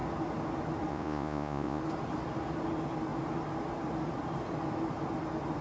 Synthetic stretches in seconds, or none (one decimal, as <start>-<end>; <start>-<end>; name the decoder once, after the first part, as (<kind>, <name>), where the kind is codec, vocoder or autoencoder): 0.9-1.8 (vocoder, Vocos)